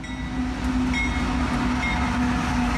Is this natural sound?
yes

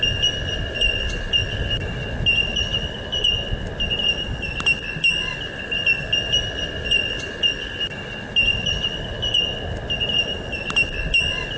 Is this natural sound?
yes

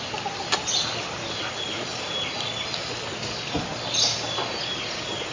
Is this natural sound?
yes